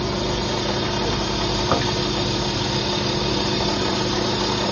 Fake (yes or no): no